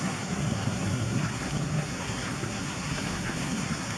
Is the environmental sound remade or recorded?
remade